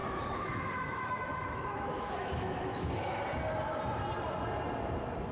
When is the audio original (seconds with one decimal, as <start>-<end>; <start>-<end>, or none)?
3.2-5.3